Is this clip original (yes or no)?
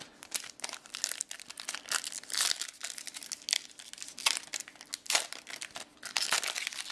yes